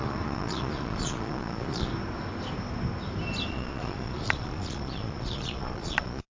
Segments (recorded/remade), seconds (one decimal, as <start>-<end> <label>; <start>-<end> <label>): 0.0-1.9 remade; 1.9-3.5 recorded; 3.5-6.3 remade